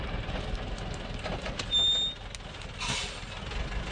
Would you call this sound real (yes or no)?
yes